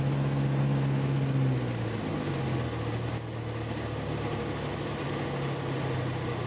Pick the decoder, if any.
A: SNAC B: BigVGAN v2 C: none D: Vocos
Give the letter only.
C